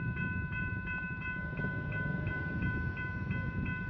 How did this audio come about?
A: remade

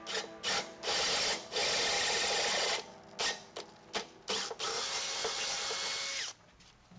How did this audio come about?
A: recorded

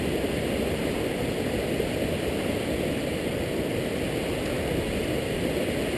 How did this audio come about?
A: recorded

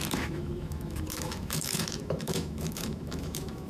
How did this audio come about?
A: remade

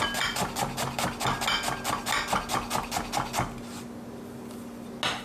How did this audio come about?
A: recorded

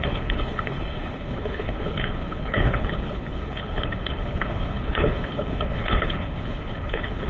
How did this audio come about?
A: remade